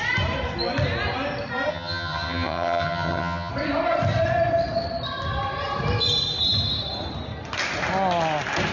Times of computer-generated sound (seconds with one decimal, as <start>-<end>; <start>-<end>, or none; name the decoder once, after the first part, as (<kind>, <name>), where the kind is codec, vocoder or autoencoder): 1.7-3.5 (vocoder, HiFi-GAN)

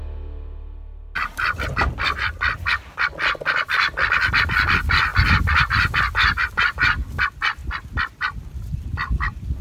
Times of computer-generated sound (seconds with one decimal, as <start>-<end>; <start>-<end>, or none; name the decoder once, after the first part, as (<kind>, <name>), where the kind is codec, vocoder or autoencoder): 5.1-5.9 (vocoder, BigVGAN v2); 7.6-9.6

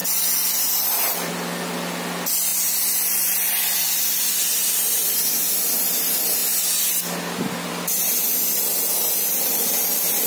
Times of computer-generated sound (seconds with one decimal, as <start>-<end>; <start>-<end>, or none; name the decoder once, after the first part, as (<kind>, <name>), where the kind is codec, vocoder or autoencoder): 0.0-1.3 (vocoder, BigVGAN v2)

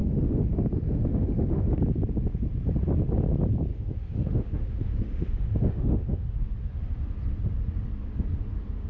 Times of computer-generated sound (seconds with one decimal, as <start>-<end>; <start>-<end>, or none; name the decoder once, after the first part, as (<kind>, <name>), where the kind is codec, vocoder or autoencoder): 0.0-1.8 (autoencoder, DAC-VAE); 3.7-6.5

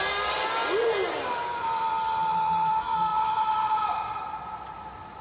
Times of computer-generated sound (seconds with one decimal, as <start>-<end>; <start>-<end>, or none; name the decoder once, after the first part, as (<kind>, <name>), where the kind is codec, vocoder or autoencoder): none

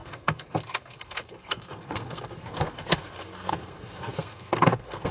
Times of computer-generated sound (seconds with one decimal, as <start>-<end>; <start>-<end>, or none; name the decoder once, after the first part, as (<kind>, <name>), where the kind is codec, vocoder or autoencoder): 0.0-5.1 (codec, SNAC)

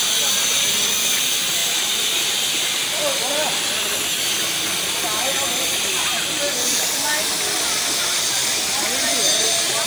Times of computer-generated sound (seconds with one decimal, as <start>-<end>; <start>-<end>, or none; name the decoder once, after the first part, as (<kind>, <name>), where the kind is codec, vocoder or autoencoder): none

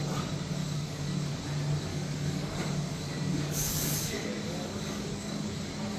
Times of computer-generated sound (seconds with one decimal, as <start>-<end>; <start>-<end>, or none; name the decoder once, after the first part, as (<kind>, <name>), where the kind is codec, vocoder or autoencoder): 0.6-1.4 (codec, DAC); 1.9-5.5